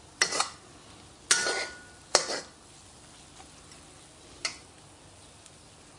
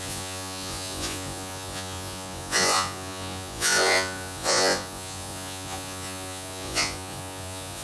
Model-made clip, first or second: second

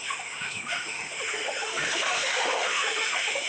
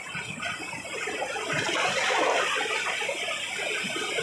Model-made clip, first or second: first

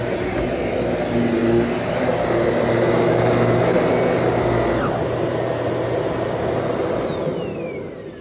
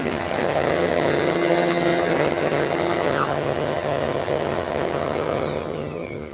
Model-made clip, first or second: second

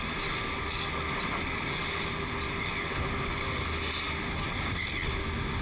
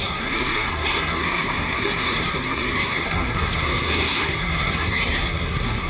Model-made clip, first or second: second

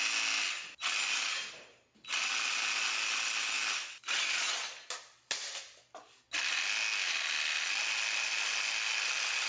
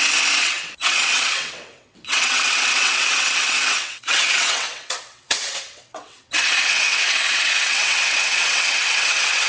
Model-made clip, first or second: second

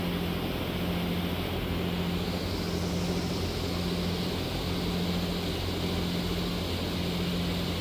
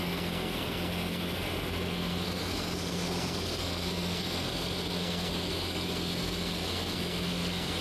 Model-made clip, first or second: second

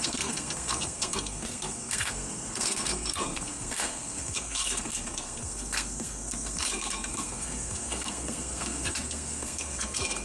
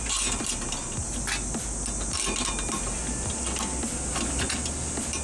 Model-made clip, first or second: first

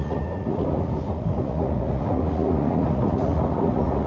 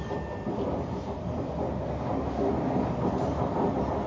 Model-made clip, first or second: first